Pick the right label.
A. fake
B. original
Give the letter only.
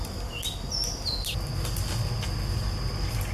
B